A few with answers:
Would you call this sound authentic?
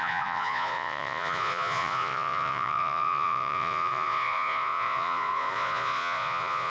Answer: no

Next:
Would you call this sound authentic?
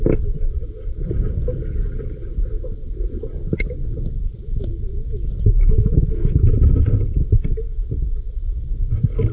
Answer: yes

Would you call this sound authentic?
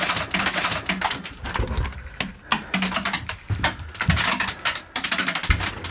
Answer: yes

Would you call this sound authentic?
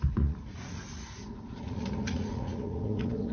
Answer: no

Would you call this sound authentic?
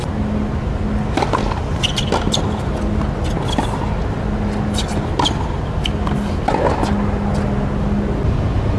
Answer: yes